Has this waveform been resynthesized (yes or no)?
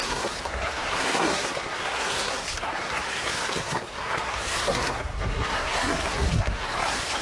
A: yes